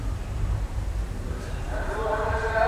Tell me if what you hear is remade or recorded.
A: remade